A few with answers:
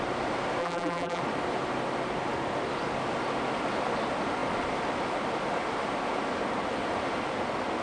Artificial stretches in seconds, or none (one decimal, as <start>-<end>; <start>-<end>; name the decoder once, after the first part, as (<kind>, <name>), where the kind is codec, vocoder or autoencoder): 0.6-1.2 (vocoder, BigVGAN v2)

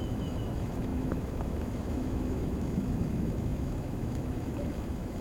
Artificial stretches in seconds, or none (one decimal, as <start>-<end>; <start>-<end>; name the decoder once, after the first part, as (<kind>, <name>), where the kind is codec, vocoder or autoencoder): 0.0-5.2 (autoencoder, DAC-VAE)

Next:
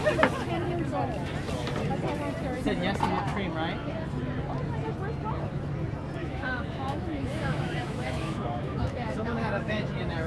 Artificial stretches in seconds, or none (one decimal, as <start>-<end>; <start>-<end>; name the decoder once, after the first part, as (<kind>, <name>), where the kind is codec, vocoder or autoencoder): 6.2-9.9 (autoencoder, DAC-VAE)